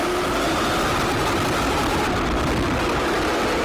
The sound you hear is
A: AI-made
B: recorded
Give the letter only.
B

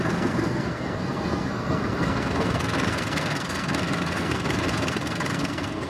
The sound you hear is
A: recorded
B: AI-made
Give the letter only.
B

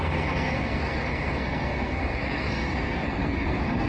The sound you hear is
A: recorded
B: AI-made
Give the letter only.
B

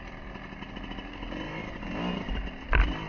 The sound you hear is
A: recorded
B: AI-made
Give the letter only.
A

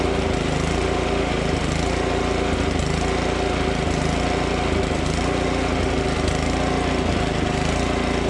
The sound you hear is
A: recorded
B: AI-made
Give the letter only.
A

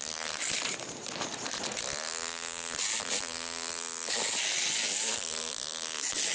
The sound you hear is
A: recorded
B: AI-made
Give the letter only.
A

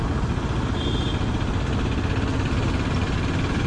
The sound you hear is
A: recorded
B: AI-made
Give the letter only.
A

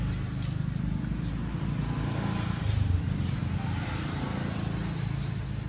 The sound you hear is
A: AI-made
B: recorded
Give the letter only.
B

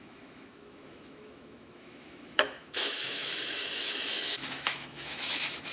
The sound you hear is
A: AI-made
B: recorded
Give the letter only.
A